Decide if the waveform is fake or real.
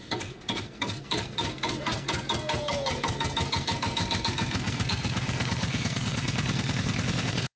fake